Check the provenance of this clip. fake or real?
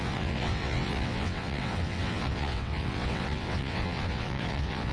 fake